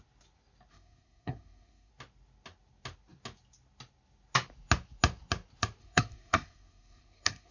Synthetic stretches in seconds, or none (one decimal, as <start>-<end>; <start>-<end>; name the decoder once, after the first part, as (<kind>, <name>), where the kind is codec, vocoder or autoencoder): 0.7-1.9 (codec, SNAC); 5.8-7.5